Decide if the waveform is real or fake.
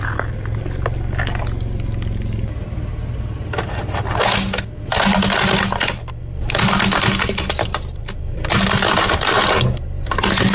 real